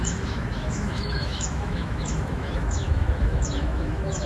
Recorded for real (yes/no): no